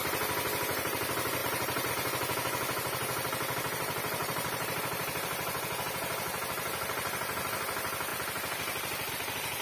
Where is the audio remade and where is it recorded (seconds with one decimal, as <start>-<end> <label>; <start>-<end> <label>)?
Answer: 0.0-1.4 recorded; 1.4-1.9 remade; 1.9-4.2 recorded; 4.2-4.8 remade; 4.8-9.6 recorded